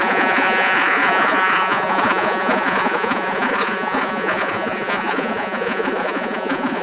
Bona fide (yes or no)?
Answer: no